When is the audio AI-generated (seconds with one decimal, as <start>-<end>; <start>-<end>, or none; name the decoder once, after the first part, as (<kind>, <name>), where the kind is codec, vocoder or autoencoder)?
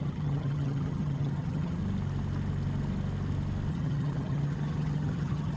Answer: 0.0-1.8 (vocoder, HiFi-GAN); 3.7-5.6